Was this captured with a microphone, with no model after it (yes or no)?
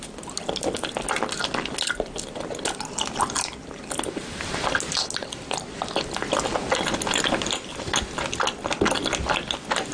yes